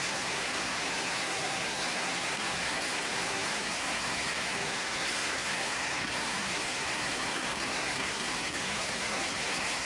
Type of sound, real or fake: fake